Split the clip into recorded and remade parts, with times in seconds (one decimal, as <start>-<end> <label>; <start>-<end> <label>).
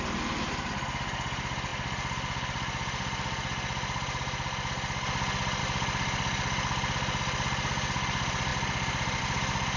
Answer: 0.0-9.8 recorded